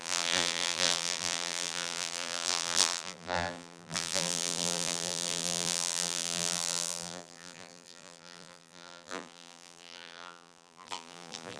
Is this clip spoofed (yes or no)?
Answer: yes